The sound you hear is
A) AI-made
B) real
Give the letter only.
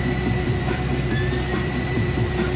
A